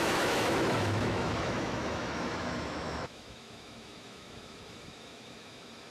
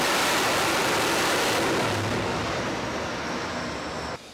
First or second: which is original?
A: second